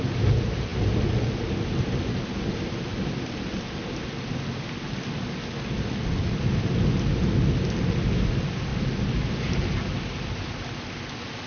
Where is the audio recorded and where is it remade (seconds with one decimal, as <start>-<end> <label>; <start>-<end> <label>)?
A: 0.0-11.5 recorded